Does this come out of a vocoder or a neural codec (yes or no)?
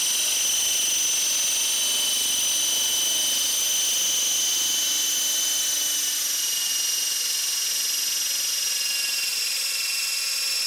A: no